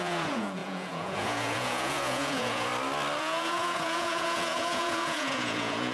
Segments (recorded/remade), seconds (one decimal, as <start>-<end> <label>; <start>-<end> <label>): 0.0-2.7 remade; 2.7-3.2 recorded; 3.2-5.9 remade